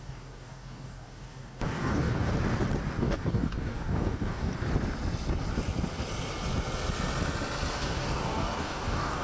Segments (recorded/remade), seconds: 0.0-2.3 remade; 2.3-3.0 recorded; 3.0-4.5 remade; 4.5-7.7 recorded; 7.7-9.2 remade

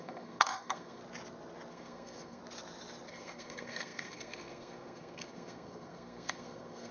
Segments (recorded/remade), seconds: 0.0-1.0 remade; 1.0-1.7 recorded; 1.7-2.4 remade; 2.4-3.1 recorded; 3.1-6.9 remade

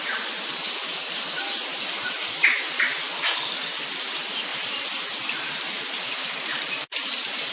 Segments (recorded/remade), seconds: 0.0-1.7 recorded; 1.7-2.8 remade; 2.8-4.5 recorded; 4.5-7.5 remade

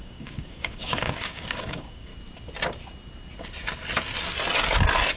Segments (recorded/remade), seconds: 0.0-2.1 remade; 2.1-5.2 recorded

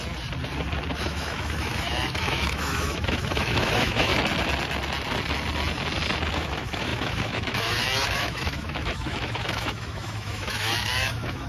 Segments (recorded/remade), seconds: 0.0-0.9 recorded; 0.9-4.1 remade; 4.1-6.3 recorded; 6.3-11.5 remade

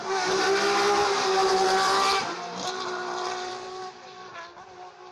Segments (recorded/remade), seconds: 0.0-1.4 recorded; 1.4-4.3 remade; 4.3-5.1 recorded

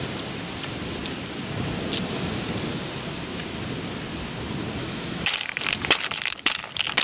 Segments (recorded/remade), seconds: 0.0-4.8 recorded; 4.8-5.3 remade; 5.3-7.0 recorded

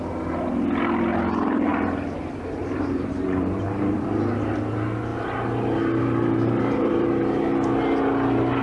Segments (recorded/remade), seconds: 0.0-1.7 recorded; 1.7-4.0 remade; 4.0-6.2 recorded; 6.2-7.1 remade; 7.1-8.6 recorded